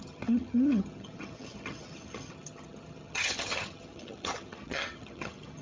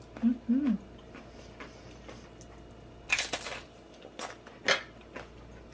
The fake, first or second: first